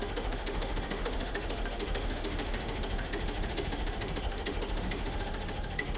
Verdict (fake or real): fake